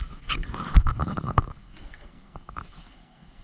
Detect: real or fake fake